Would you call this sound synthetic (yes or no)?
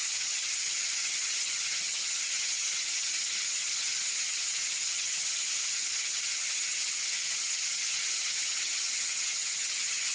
yes